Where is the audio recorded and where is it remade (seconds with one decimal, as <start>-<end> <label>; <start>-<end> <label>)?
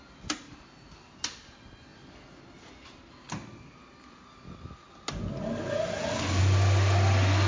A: 0.0-7.5 recorded